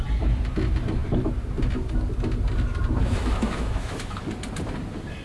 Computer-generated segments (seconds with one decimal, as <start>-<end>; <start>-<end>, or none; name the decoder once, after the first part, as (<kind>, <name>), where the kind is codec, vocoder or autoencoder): 3.0-4.2 (autoencoder, DAC-VAE)